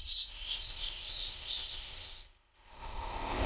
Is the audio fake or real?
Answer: fake